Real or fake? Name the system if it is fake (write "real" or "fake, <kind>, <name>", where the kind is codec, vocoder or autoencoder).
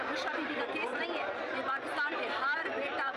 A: real